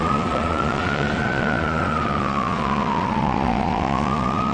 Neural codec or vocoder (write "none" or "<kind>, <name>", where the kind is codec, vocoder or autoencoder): vocoder, Vocos